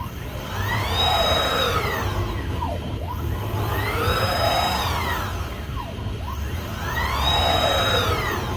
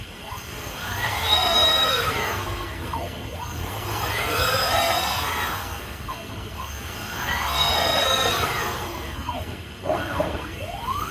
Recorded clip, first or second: first